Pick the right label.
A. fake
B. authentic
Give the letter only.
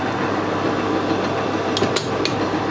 B